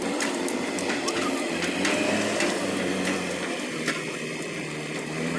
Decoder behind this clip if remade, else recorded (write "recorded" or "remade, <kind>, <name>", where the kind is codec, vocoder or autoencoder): remade, vocoder, BigVGAN v2